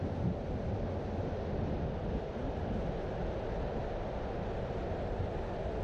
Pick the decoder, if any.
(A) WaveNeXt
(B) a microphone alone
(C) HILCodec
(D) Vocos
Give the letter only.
B